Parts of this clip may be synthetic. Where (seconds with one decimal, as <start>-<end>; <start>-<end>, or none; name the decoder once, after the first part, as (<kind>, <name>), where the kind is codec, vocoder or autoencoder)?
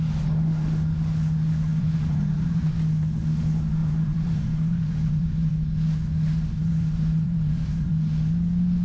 1.7-2.7 (vocoder, BigVGAN v2); 3.8-5.5; 6.6-7.9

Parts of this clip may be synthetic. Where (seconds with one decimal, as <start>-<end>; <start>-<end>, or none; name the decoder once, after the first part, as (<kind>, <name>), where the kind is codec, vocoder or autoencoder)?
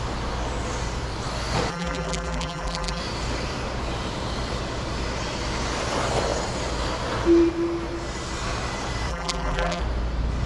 1.7-3.0 (vocoder, BigVGAN v2); 9.1-9.8